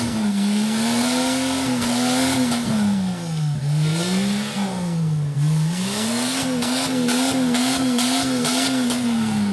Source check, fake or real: fake